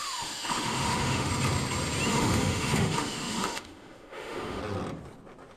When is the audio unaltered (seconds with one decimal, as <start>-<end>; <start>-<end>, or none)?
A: 1.3-2.1; 4.6-5.6

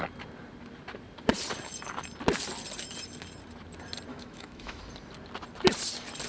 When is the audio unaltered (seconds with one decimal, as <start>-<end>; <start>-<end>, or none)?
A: 0.0-4.1; 4.8-6.3

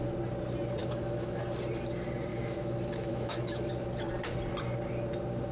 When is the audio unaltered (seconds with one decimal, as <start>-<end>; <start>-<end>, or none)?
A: 0.0-0.8; 1.4-2.3; 3.7-5.5

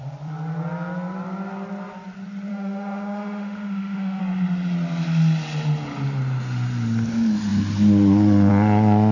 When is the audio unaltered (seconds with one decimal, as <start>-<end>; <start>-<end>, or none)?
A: 0.0-2.5; 4.2-9.1